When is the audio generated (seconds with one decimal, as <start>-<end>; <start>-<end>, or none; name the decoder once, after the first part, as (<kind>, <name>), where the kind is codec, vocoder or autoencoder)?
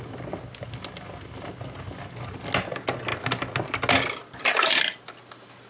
none